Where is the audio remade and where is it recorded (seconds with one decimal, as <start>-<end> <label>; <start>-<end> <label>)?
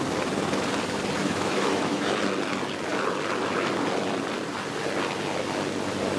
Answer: 0.0-1.2 recorded; 1.2-2.2 remade; 2.2-6.2 recorded